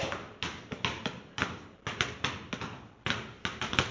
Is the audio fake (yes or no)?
no